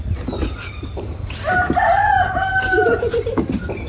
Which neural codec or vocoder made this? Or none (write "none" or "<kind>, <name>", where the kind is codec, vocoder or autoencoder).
none